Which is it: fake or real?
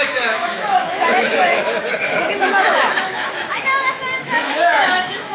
fake